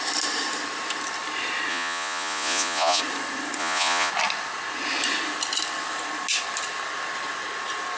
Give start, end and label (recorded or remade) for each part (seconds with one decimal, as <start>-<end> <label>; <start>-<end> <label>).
0.0-1.7 recorded; 1.7-3.0 remade; 3.0-3.6 recorded; 3.6-4.1 remade; 4.1-8.0 recorded

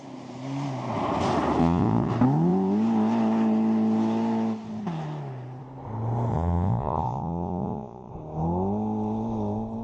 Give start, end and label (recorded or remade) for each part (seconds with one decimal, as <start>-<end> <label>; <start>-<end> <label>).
0.0-1.6 recorded; 1.6-2.1 remade; 2.1-6.3 recorded; 6.3-8.1 remade; 8.1-9.8 recorded

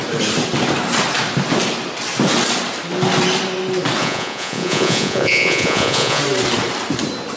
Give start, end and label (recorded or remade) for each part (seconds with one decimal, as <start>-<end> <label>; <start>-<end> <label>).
0.0-4.0 recorded; 4.0-6.2 remade; 6.2-7.4 recorded